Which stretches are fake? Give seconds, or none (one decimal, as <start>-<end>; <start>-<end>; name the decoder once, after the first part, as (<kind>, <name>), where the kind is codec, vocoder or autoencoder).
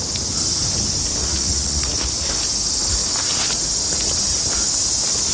1.2-2.3 (vocoder, Vocos)